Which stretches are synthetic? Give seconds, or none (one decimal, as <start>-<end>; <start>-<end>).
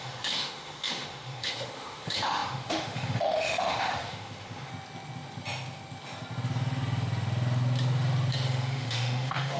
0.0-4.7; 8.3-9.6